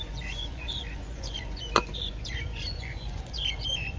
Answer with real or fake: fake